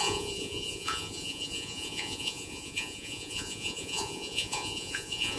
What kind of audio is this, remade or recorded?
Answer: remade